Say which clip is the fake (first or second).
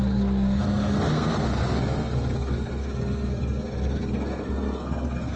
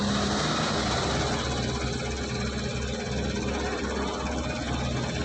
first